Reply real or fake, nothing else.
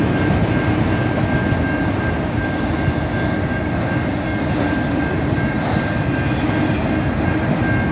real